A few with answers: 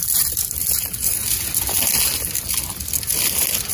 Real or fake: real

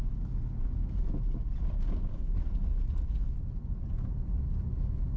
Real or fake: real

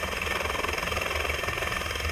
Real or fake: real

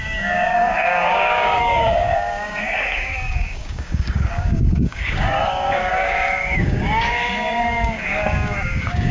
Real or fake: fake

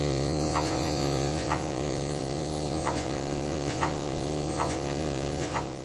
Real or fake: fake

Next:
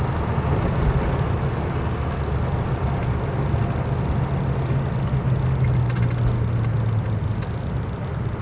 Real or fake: real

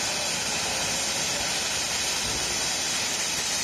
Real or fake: real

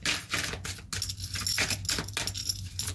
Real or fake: real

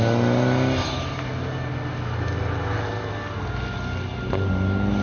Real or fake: real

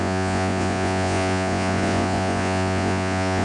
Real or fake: fake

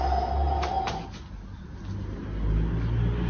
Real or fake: real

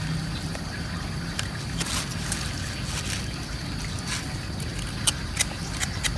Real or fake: real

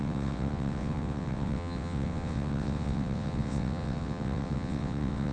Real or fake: fake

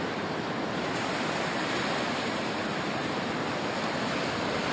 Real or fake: fake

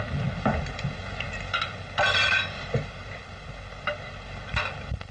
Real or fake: real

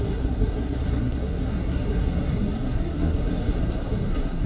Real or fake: fake